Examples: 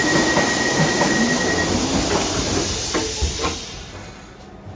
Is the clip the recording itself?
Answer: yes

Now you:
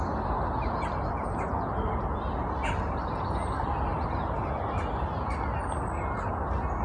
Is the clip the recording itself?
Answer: yes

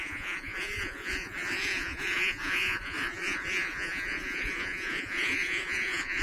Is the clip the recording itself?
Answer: no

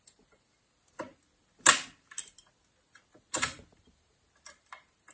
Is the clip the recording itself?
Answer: yes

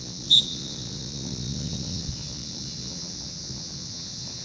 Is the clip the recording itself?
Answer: no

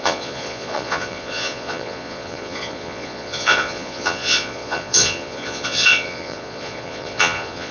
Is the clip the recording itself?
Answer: no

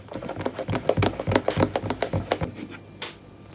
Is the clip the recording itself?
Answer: yes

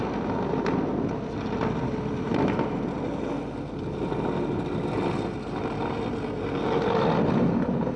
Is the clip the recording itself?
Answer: yes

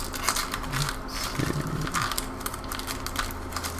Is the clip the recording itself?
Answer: yes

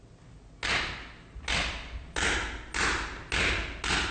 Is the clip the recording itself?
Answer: yes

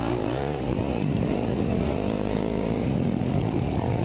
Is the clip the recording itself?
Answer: no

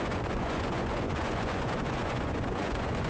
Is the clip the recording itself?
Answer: no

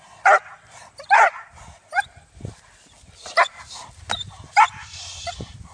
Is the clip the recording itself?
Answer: yes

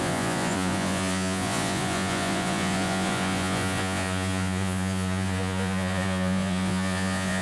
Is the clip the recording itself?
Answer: no